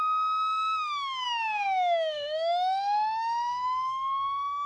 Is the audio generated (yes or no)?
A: yes